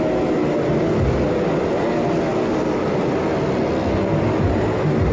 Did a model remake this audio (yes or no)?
no